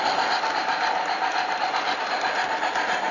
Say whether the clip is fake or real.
real